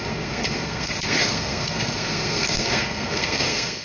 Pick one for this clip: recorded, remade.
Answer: remade